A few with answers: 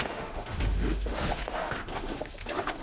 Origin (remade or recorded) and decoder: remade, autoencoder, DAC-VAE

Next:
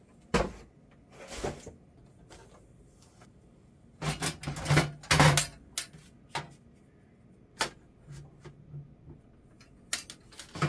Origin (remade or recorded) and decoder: recorded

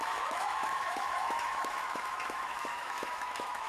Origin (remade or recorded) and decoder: remade, autoencoder, DAC-VAE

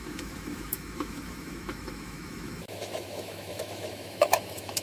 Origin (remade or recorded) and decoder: remade, autoencoder, DAC-VAE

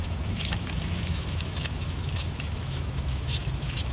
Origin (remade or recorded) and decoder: remade, autoencoder, DAC-VAE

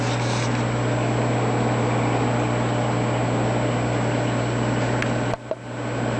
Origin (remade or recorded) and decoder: recorded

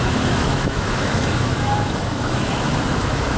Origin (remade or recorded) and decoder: remade, autoencoder, DAC-VAE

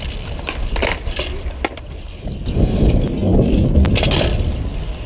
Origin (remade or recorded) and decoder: recorded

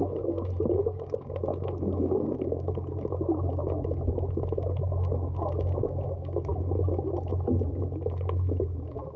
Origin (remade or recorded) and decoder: remade, autoencoder, DAC-VAE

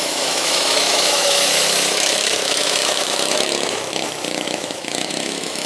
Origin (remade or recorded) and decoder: remade, autoencoder, DAC-VAE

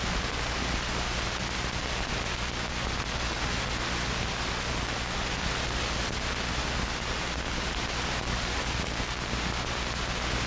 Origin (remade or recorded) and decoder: recorded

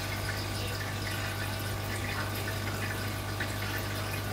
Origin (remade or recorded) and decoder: recorded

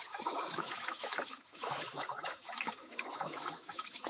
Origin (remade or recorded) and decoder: remade, autoencoder, DAC-VAE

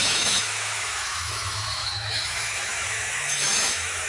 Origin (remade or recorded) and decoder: remade, autoencoder, DAC-VAE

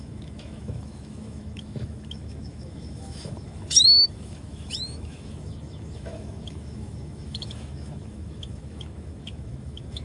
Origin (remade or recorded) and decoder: remade, autoencoder, DAC-VAE